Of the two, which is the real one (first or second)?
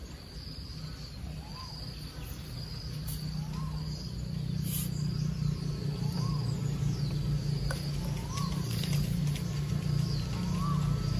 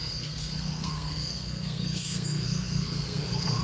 first